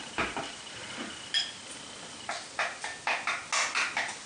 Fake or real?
real